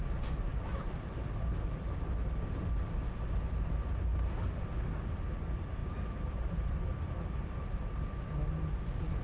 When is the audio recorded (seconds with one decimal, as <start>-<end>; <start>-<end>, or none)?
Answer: 0.0-9.2